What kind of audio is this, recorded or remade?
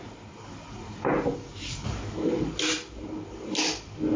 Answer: recorded